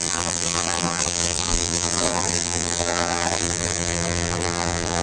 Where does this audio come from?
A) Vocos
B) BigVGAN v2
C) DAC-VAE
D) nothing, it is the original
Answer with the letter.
B